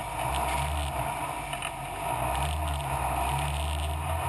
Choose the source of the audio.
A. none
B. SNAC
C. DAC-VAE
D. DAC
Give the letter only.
A